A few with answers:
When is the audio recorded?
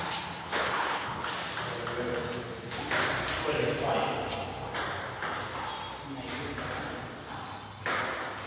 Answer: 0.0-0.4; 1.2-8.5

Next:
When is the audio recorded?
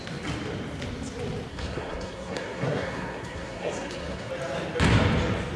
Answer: 0.0-1.5; 4.3-5.6